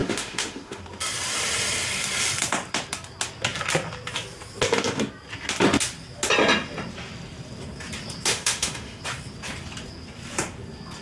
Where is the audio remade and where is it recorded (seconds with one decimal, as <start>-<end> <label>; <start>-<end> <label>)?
0.0-0.8 remade; 0.8-8.3 recorded; 8.3-9.0 remade; 9.0-11.0 recorded